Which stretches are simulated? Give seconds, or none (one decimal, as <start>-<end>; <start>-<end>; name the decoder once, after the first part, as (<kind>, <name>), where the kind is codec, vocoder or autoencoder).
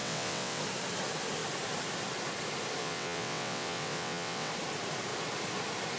0.0-0.6 (vocoder, WaveNeXt); 2.8-4.5